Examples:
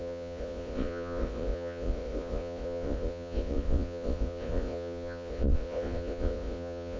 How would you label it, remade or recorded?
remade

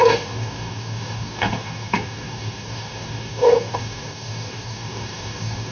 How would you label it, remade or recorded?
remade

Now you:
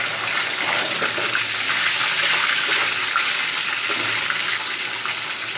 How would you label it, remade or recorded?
recorded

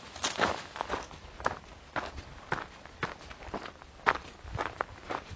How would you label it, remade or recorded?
recorded